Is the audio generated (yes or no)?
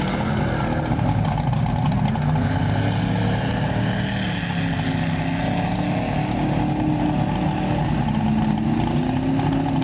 no